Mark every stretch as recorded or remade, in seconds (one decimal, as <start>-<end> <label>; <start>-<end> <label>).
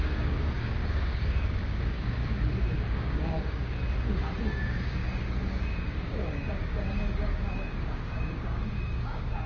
0.0-2.2 remade; 2.2-2.8 recorded; 2.8-3.8 remade; 3.8-4.4 recorded; 4.4-9.5 remade